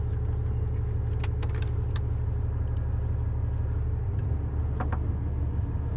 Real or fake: real